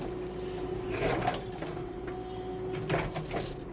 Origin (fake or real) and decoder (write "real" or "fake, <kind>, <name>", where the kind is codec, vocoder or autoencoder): real